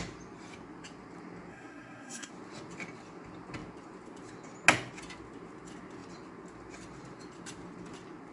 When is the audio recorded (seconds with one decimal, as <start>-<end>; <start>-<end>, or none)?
0.0-1.5; 2.3-8.3

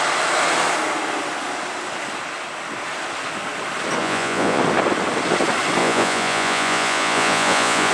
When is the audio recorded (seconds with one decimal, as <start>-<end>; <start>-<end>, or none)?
0.0-4.0; 4.6-5.8

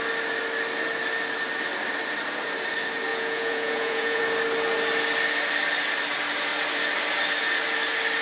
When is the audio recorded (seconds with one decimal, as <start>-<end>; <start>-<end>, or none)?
0.0-3.1; 4.2-8.2

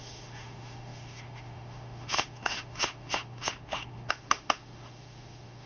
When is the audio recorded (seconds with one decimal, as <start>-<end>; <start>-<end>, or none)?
none